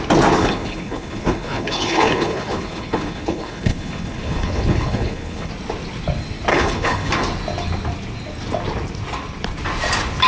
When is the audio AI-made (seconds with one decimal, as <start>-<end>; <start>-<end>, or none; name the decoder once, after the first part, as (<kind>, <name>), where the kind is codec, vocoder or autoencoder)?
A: 0.4-5.5 (codec, HILCodec); 6.5-7.1